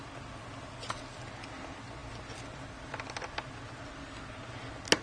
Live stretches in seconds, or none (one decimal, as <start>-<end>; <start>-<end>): 0.0-5.0